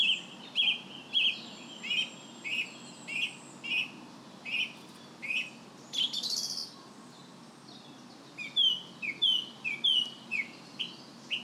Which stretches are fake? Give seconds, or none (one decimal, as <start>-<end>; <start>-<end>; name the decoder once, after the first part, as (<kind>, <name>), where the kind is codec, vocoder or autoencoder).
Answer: 10.3-10.8 (vocoder, BigVGAN v2)